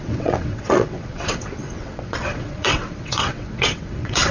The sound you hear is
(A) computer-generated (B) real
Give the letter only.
A